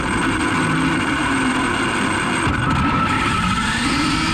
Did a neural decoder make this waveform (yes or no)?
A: no